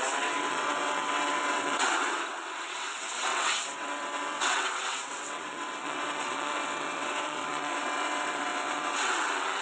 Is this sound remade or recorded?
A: remade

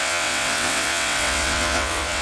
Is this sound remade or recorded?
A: remade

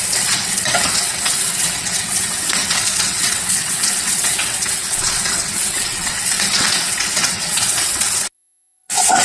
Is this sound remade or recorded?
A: remade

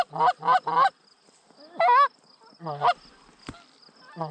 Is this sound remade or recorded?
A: recorded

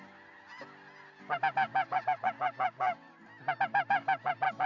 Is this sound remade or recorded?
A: recorded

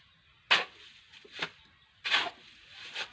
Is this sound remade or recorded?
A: recorded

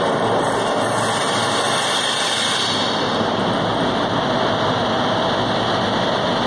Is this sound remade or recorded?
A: recorded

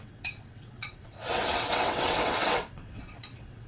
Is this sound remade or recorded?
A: remade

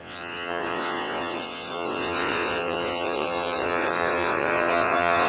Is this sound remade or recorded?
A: remade